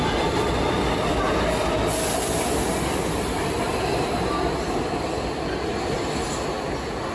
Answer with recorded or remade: recorded